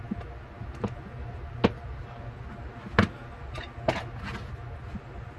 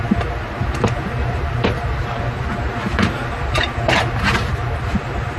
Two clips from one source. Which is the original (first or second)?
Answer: first